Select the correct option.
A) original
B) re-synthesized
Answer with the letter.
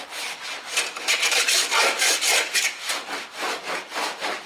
A